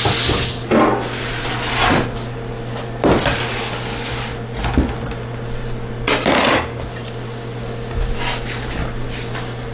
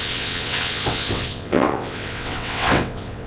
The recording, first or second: first